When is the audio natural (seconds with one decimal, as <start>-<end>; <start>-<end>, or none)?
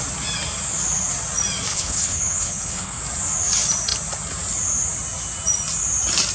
0.0-1.7; 3.0-6.3